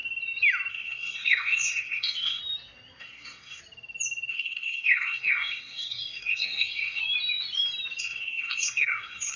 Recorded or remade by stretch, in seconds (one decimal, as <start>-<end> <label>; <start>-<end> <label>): 0.0-0.7 recorded; 0.7-2.4 remade; 2.4-3.0 recorded; 3.0-3.6 remade; 3.6-4.3 recorded; 4.3-7.0 remade; 7.0-8.0 recorded; 8.0-9.4 remade